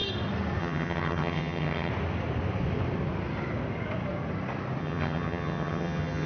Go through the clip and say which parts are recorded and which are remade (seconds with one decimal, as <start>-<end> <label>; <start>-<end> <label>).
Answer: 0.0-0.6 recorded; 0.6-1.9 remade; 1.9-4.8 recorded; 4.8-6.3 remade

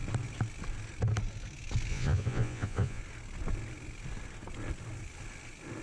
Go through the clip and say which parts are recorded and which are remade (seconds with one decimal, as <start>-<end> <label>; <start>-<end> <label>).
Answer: 0.0-1.9 recorded; 1.9-3.0 remade; 3.0-5.8 recorded

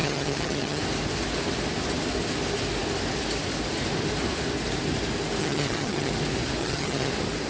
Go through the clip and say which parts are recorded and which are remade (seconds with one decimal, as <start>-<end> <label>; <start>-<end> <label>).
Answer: 0.0-0.8 remade; 0.8-5.4 recorded; 5.4-6.1 remade; 6.1-6.6 recorded; 6.6-7.1 remade; 7.1-7.5 recorded

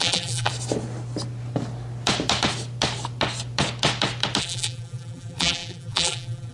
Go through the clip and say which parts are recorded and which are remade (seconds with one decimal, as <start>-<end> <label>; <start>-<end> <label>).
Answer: 0.0-0.5 remade; 0.5-4.4 recorded; 4.4-6.5 remade

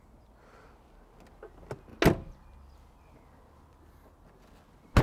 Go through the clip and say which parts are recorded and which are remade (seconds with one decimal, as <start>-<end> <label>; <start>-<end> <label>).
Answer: 0.0-5.0 recorded

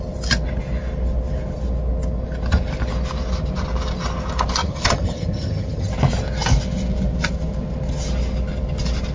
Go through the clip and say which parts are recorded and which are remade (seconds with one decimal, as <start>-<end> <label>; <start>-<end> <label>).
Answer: 0.0-4.6 recorded; 4.6-5.9 remade; 5.9-9.1 recorded

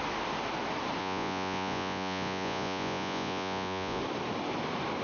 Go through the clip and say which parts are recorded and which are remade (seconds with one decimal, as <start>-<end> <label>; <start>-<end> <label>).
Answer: 0.0-1.0 recorded; 1.0-4.0 remade; 4.0-5.0 recorded